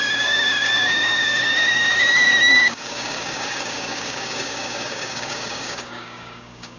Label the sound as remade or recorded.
remade